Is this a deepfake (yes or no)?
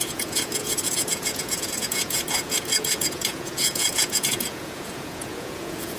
yes